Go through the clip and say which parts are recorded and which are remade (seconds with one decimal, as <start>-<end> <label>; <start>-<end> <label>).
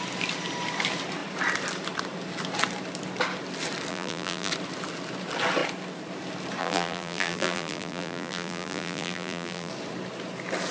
0.0-3.9 recorded; 3.9-4.5 remade; 4.5-6.6 recorded; 6.6-9.7 remade; 9.7-10.7 recorded